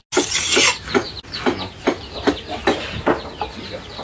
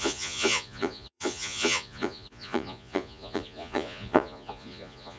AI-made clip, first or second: second